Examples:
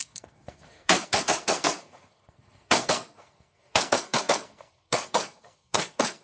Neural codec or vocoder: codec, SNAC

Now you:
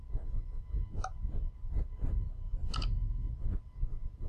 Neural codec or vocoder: none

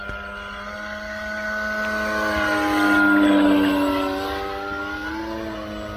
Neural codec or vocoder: none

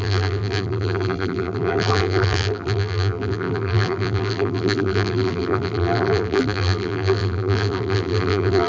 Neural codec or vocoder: vocoder, BigVGAN v2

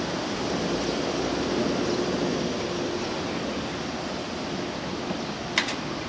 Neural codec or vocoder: none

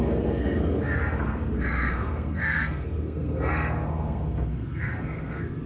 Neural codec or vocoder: codec, SNAC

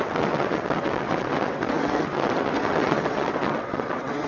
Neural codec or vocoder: vocoder, WaveNeXt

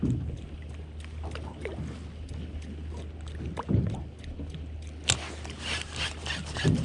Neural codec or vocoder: none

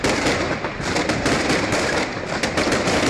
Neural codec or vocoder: none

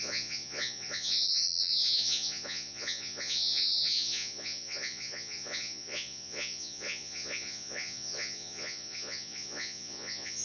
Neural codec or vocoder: vocoder, Vocos